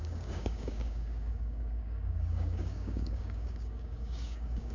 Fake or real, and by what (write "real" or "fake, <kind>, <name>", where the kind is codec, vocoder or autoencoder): fake, codec, DAC